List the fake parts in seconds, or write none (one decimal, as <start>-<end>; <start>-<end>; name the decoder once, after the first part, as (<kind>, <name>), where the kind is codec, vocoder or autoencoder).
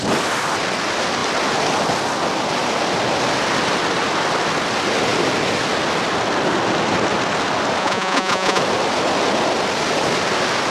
7.8-8.6 (vocoder, Vocos)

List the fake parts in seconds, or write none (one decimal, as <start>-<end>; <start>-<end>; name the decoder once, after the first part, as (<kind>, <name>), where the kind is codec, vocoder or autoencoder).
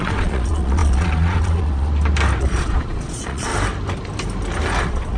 0.0-1.9 (vocoder, Vocos); 2.4-3.5; 4.8-5.2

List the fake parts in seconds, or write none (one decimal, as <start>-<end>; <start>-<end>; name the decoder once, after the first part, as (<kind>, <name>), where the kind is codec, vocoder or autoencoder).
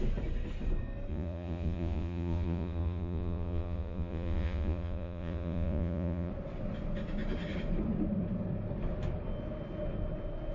1.1-6.3 (vocoder, Vocos)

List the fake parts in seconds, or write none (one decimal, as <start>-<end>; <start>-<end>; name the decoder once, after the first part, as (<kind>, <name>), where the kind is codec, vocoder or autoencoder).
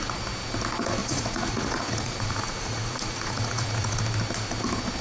1.0-4.0 (vocoder, Vocos)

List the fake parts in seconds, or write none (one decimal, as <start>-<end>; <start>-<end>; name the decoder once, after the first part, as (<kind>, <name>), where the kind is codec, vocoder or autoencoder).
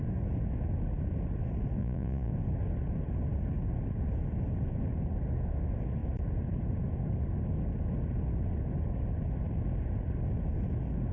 1.8-2.3 (vocoder, Vocos)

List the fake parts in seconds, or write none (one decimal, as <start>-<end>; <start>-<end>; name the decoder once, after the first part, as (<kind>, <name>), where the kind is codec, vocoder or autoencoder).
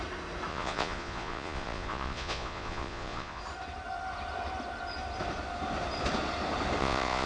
0.5-3.4 (vocoder, Vocos); 6.8-7.3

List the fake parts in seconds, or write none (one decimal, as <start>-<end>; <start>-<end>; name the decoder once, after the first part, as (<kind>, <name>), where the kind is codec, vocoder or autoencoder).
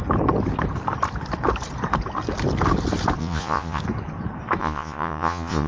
3.2-3.8 (vocoder, Vocos); 4.6-5.7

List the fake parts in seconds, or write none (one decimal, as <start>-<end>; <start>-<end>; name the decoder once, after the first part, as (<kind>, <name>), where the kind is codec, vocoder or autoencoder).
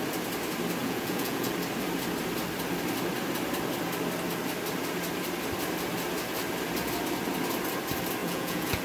0.8-1.5 (vocoder, Vocos); 8.2-8.8